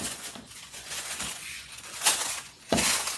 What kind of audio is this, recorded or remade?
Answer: remade